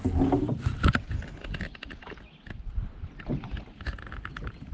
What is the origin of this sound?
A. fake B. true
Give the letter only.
B